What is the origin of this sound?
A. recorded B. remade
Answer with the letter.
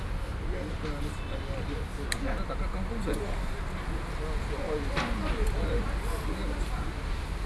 A